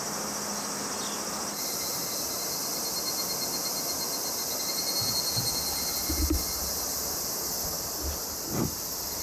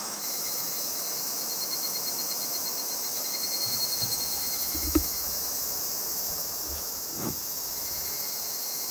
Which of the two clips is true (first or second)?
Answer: first